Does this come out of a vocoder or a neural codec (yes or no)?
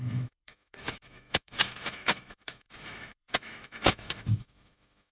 yes